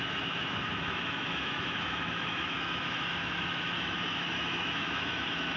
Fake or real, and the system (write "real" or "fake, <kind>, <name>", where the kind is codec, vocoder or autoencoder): fake, autoencoder, DAC-VAE